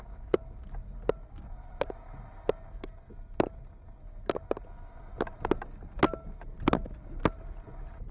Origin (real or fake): real